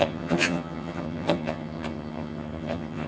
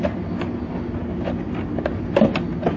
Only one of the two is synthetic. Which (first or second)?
first